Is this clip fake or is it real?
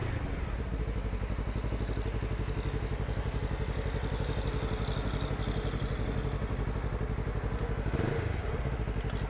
real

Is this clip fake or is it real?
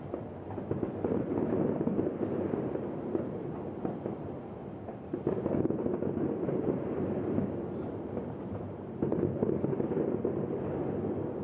fake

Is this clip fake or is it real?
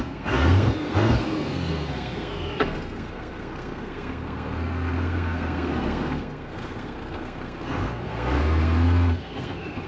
fake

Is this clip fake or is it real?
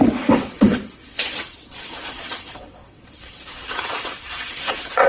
fake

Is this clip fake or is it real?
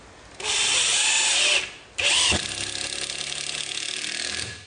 real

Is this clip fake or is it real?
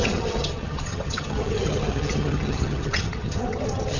fake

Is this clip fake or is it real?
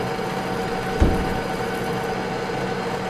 real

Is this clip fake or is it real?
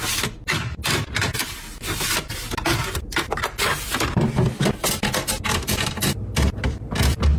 real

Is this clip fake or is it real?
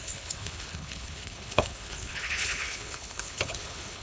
fake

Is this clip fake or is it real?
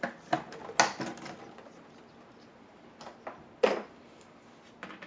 real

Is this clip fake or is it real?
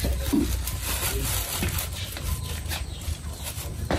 real